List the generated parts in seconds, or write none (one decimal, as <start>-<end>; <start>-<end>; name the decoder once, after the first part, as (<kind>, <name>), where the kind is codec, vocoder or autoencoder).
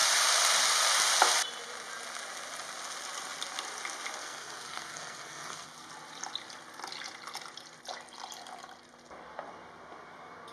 4.2-5.9 (codec, SNAC)